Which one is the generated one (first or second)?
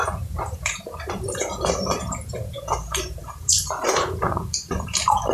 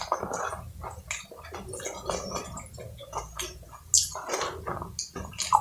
first